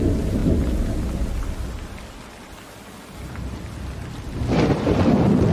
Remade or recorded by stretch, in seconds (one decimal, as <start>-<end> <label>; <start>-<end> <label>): 0.0-5.5 recorded